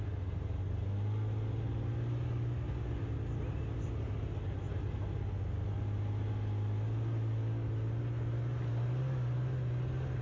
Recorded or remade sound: recorded